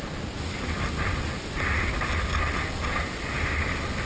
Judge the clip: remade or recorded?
recorded